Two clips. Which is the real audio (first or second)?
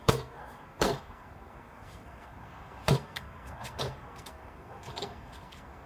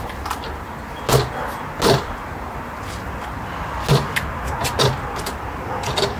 second